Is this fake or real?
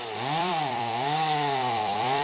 fake